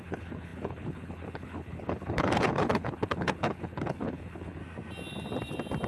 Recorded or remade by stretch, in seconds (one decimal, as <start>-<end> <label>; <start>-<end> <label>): 0.0-4.6 remade; 4.6-5.9 recorded